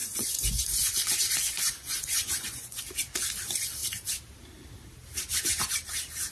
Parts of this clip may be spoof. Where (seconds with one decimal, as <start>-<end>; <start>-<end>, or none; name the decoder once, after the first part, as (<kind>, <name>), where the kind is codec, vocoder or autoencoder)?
0.0-2.8 (vocoder, Vocos)